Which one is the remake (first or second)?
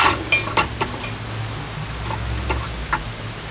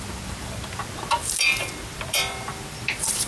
second